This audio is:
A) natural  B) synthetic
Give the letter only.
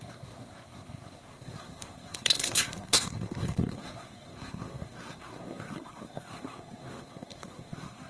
B